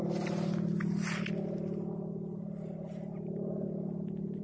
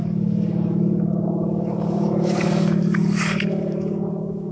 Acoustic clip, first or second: first